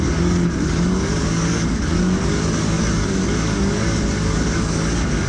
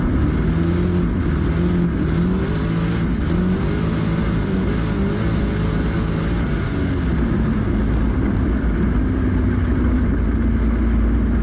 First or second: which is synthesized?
first